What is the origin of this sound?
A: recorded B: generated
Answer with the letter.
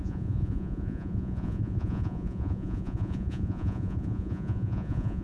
B